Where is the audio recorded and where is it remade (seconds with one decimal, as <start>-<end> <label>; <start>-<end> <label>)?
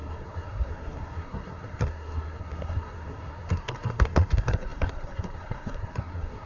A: 0.0-6.5 remade